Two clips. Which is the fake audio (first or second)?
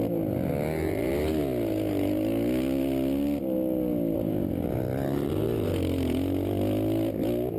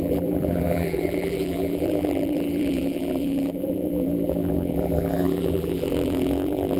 second